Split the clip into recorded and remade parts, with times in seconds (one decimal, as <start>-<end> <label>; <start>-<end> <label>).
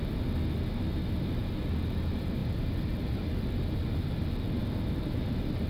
0.0-5.7 recorded